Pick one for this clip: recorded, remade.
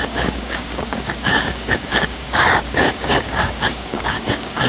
remade